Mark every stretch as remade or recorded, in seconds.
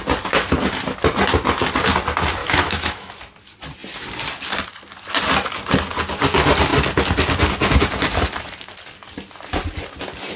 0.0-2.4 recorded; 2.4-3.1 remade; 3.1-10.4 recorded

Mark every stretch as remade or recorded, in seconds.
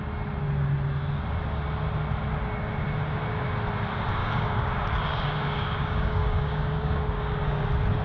0.0-4.2 recorded; 4.2-7.6 remade; 7.6-8.0 recorded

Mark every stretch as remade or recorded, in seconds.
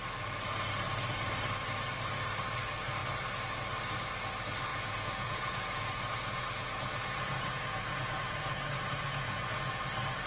0.0-4.7 recorded; 4.7-9.8 remade; 9.8-10.3 recorded